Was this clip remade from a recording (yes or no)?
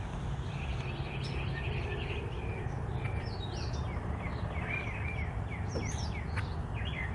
no